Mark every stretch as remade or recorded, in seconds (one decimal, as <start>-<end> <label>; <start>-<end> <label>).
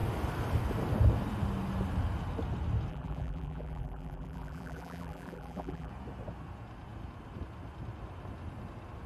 0.0-2.9 recorded; 2.9-5.9 remade; 5.9-9.1 recorded